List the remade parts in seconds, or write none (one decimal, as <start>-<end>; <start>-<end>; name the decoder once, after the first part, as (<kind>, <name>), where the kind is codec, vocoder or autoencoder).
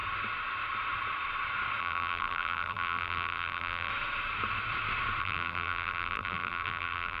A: 1.8-3.9 (vocoder, BigVGAN v2); 5.2-7.2